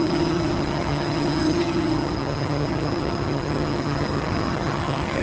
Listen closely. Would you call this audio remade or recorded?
remade